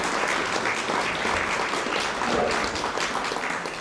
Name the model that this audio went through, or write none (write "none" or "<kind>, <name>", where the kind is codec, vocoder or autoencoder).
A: none